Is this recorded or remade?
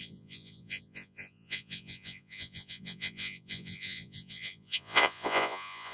remade